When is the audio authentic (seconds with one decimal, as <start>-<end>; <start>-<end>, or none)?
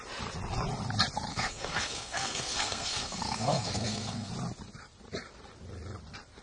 0.0-1.3; 4.3-6.4